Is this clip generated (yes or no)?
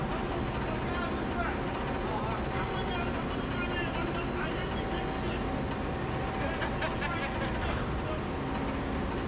no